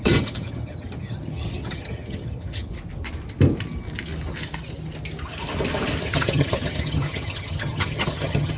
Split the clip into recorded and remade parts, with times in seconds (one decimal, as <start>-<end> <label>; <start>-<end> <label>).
0.0-2.7 remade; 2.7-6.1 recorded; 6.1-8.6 remade